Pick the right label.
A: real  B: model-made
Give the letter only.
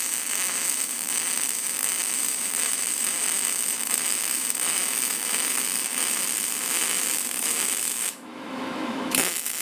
B